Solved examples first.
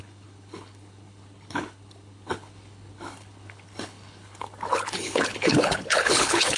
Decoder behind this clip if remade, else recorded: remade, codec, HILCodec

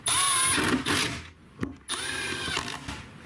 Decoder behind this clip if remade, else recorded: recorded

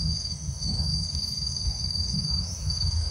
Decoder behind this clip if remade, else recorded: remade, autoencoder, DAC-VAE